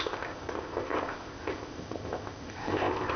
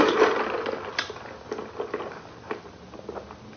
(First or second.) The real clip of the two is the second